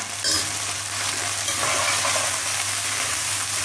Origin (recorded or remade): remade